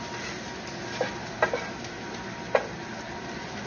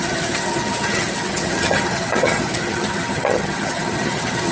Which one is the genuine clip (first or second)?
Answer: first